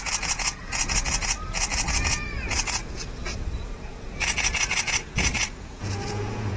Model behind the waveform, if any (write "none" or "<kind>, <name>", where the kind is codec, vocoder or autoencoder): vocoder, Vocos